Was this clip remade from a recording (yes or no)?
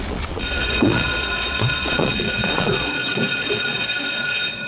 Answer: yes